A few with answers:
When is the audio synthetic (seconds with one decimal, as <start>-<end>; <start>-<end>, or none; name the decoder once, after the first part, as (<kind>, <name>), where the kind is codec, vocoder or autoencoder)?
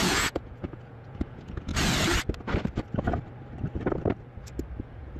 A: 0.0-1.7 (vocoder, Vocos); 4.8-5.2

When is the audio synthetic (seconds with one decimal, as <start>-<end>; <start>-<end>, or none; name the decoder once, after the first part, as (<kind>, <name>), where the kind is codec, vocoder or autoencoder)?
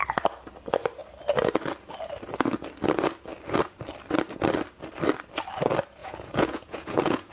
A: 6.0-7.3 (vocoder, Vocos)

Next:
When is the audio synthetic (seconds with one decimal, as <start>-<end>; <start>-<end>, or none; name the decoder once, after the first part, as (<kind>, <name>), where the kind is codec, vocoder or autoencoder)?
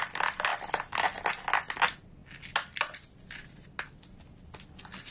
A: none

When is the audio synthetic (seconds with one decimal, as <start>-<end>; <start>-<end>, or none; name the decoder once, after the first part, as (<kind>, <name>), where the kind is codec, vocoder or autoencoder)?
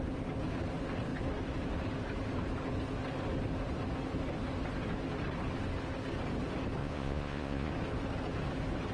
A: 6.8-7.7 (vocoder, Vocos)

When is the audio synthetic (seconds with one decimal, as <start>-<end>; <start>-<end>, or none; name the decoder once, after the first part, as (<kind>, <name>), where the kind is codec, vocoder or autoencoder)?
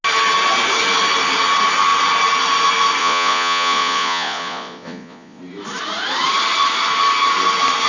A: 3.0-5.4 (vocoder, Vocos)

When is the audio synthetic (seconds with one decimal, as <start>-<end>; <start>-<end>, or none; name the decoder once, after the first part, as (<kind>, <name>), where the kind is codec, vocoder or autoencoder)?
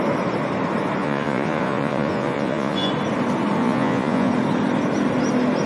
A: 1.0-2.9 (vocoder, Vocos); 3.6-4.3